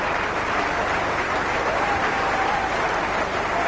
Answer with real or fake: real